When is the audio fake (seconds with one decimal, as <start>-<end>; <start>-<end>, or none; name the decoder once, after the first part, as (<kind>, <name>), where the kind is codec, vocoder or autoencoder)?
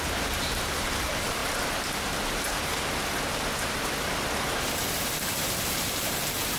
0.0-1.4 (vocoder, BigVGAN v2); 5.2-6.6